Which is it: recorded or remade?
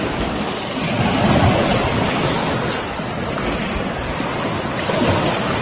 recorded